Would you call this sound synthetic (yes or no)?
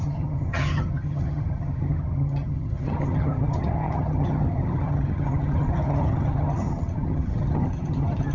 yes